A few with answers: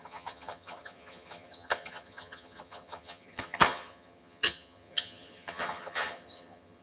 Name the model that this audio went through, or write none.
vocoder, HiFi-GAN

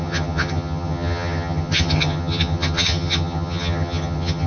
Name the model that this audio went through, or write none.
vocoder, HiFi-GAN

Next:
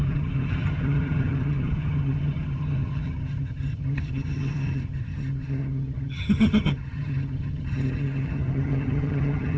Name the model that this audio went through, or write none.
vocoder, HiFi-GAN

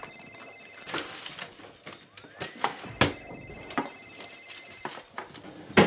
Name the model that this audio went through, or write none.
none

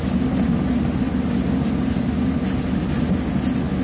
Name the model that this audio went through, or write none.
none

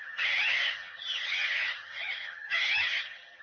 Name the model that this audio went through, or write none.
vocoder, HiFi-GAN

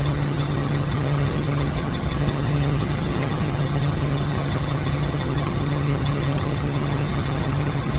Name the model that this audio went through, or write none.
vocoder, HiFi-GAN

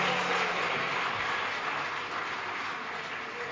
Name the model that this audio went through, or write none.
none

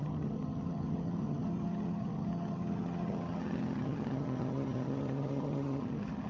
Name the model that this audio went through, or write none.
vocoder, HiFi-GAN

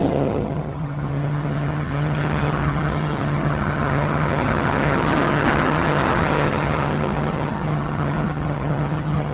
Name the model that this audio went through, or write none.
vocoder, HiFi-GAN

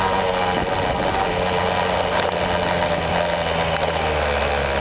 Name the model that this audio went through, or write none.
none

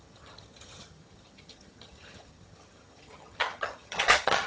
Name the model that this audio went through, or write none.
vocoder, HiFi-GAN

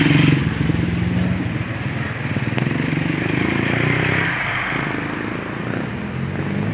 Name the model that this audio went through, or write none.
none